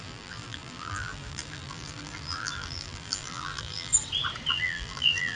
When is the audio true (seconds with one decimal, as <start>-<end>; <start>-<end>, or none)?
3.9-4.5